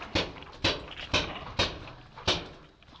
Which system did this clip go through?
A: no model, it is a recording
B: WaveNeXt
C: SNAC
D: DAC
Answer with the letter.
A